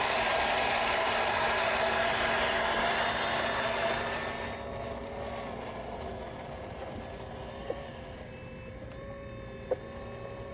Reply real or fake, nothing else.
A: real